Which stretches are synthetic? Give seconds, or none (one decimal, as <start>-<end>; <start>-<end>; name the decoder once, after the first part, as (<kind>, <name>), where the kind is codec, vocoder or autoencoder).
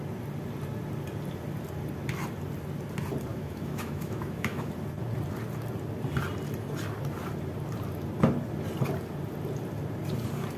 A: 3.3-4.7 (autoencoder, DAC-VAE)